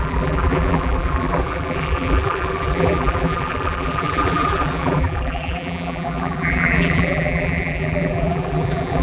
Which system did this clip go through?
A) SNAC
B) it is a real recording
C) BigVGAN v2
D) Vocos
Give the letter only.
C